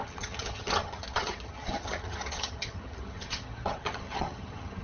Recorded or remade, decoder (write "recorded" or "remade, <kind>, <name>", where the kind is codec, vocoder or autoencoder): remade, vocoder, HiFi-GAN